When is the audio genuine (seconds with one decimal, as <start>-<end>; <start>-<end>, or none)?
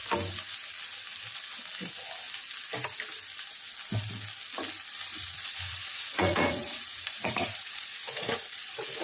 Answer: 0.0-5.1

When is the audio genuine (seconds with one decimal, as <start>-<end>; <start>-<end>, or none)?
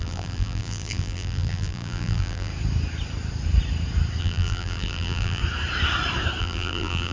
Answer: 2.5-4.2; 5.4-6.4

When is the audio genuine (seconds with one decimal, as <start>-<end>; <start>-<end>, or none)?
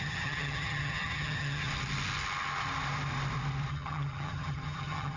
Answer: 1.7-3.7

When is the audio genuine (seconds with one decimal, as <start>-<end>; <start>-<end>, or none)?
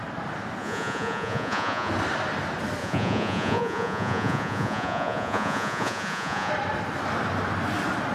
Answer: 0.0-0.6; 1.9-2.8; 6.5-8.1